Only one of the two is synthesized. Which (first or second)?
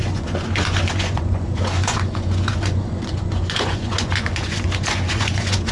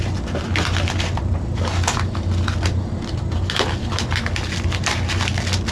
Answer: first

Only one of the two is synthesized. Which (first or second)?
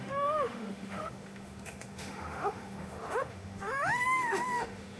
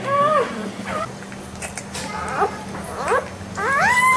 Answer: first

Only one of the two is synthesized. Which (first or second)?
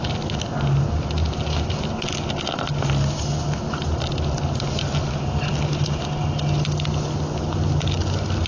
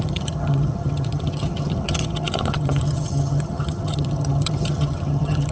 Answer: second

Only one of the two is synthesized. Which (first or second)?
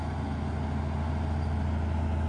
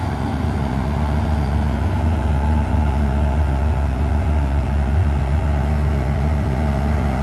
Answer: second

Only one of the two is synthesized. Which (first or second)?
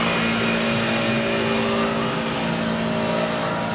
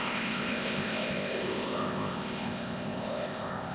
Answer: second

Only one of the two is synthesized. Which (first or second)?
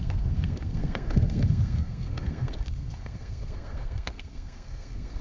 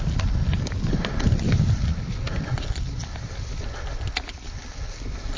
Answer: first